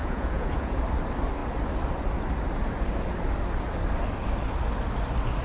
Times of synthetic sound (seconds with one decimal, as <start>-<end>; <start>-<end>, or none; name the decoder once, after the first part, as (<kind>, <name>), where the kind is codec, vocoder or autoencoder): 0.0-0.8 (vocoder, Vocos)